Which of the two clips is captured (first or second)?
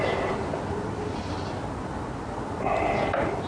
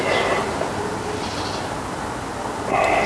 second